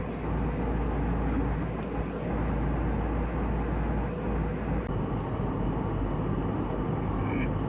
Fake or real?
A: real